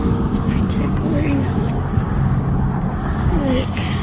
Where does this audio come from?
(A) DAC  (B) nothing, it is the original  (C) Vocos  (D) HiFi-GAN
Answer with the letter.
A